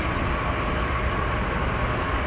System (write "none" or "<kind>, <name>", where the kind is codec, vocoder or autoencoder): none